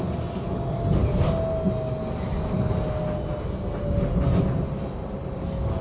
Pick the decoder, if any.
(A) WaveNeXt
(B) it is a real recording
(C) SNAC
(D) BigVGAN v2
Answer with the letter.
B